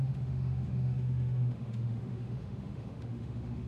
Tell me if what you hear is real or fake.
fake